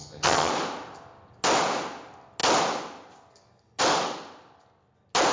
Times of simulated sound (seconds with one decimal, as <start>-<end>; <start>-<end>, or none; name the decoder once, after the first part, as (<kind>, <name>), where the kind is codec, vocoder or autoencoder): 0.0-0.5 (vocoder, HiFi-GAN)